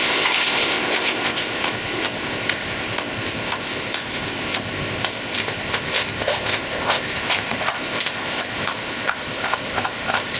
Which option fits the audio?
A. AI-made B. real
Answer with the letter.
A